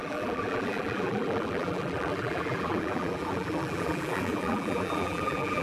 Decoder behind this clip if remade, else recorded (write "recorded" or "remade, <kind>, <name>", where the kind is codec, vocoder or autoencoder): remade, vocoder, BigVGAN v2